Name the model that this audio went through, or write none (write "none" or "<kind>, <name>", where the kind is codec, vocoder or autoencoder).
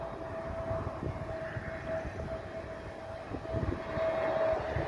none